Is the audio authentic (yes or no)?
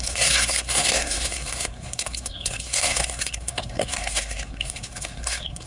no